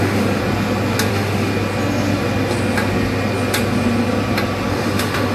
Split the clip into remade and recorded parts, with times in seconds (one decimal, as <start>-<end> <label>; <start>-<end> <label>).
0.0-0.4 remade; 0.4-1.1 recorded; 1.1-1.5 remade; 1.5-4.7 recorded; 4.7-5.3 remade